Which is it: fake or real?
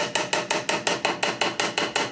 real